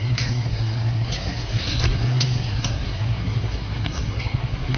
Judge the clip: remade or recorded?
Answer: remade